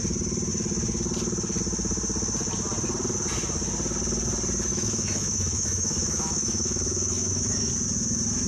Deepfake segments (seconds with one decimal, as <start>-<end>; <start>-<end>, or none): 4.7-7.7